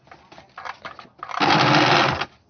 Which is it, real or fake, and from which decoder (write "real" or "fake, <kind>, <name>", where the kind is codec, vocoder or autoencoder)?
real